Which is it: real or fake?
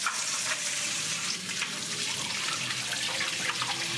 real